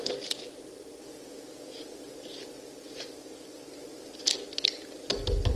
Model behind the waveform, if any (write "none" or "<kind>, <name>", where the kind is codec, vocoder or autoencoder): none